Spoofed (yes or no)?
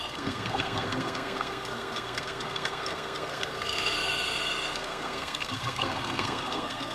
yes